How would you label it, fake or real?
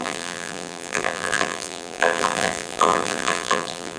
fake